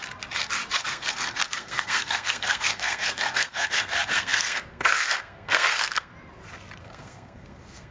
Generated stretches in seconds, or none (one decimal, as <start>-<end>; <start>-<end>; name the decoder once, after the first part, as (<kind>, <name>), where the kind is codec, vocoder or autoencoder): 0.9-6.1 (codec, SNAC); 6.8-7.9